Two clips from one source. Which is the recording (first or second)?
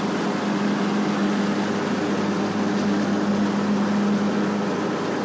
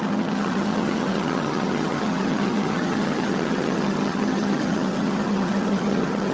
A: first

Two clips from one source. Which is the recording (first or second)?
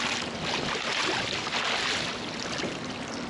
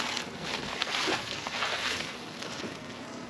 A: first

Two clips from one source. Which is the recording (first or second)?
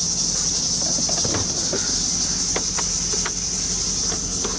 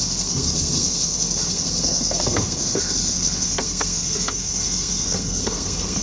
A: first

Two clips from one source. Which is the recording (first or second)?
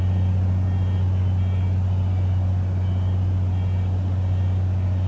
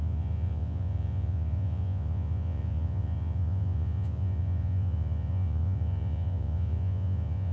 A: first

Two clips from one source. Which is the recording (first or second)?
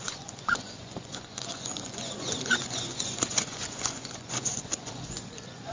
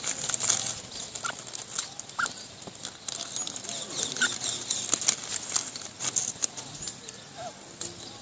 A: second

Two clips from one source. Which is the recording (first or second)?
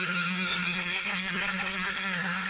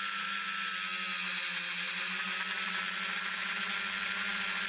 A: second